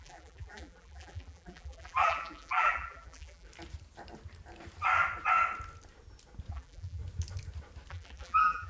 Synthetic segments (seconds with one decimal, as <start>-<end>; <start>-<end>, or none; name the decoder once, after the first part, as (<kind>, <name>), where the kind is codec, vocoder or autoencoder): 0.0-3.5 (vocoder, BigVGAN v2); 6.5-7.0; 7.9-8.7